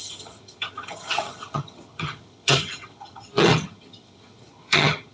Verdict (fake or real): fake